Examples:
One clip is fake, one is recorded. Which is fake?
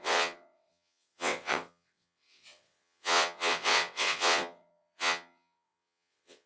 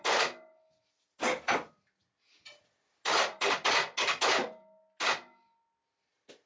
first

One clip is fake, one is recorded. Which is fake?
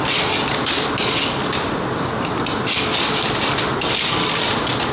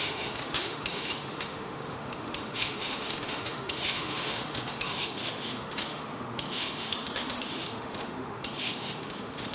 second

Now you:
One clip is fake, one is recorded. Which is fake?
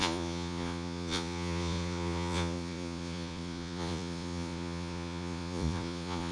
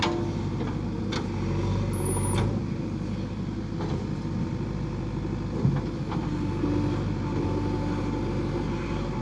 first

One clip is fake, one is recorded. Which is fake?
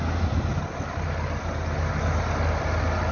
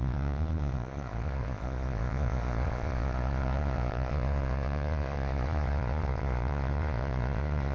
second